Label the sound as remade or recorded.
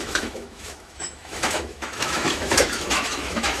remade